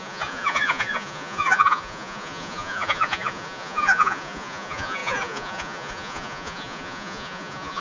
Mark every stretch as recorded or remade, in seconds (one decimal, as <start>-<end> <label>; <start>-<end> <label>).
0.0-7.8 remade